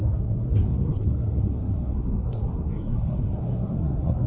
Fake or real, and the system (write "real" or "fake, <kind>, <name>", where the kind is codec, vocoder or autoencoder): fake, codec, SNAC